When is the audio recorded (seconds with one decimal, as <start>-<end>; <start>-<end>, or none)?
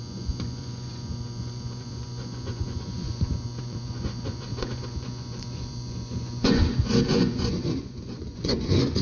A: none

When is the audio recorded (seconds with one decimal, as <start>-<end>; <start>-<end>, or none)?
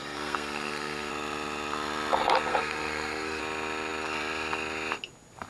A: 1.1-2.5; 3.4-5.5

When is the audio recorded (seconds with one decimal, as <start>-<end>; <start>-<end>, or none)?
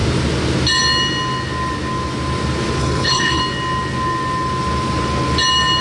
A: 0.0-2.8; 3.4-5.8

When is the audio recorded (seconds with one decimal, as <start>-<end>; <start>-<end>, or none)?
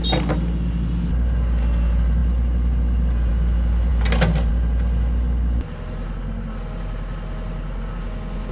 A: 0.0-8.5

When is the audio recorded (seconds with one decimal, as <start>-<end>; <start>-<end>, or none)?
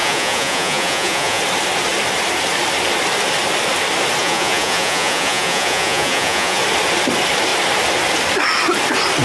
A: 1.4-4.2; 6.6-9.2